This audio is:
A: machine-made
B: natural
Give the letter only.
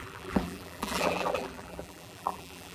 A